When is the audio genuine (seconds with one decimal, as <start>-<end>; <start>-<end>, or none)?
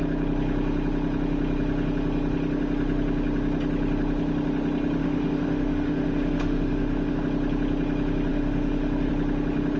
0.0-5.0; 7.2-8.3; 9.1-9.8